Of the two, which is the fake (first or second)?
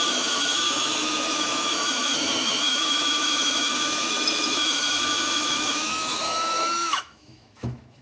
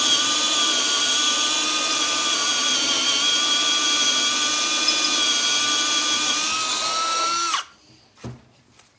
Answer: first